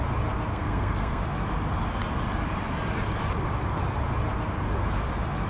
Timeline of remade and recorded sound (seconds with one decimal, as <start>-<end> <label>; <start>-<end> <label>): 0.0-0.5 recorded; 0.5-1.2 remade; 1.2-5.5 recorded